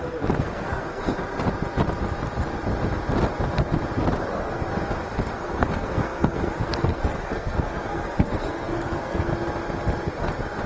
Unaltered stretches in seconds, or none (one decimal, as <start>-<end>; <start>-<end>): 1.2-4.3; 4.7-5.3; 9.3-10.7

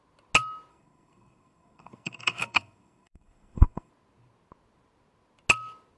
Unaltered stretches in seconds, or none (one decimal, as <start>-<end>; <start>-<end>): 0.0-0.7; 3.9-6.0

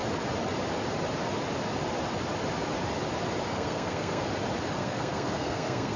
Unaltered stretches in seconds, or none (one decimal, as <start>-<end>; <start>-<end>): 0.0-3.5; 4.3-4.8

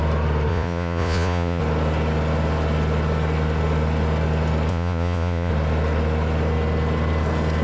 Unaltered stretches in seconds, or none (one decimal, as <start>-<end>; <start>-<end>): 0.0-0.5; 1.6-4.7; 5.5-7.6

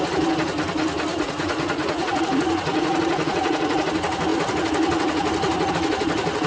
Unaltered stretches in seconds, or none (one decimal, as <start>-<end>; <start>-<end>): 0.0-1.1; 2.2-2.7; 3.8-6.5